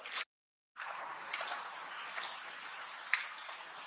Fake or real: real